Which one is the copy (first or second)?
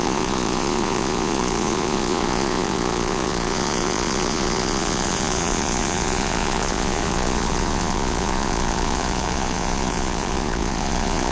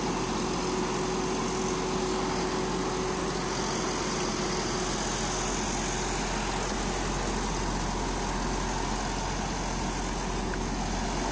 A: first